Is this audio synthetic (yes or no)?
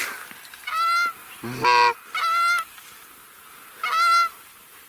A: no